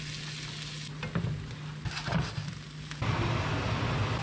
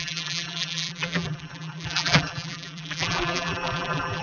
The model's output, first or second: second